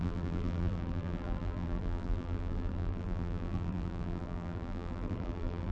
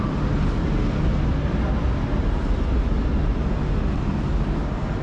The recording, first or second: second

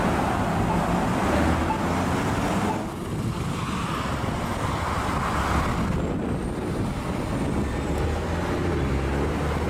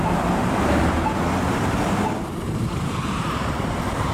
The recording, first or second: first